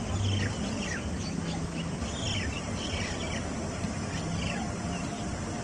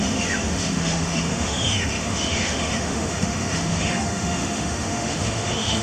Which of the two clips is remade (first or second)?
second